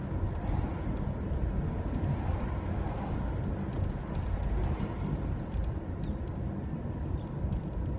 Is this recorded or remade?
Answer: recorded